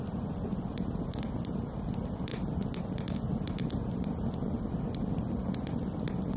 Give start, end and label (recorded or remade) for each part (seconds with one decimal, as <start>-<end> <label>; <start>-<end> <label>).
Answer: 0.0-6.4 recorded